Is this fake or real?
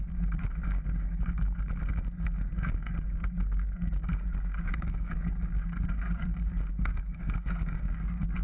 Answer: fake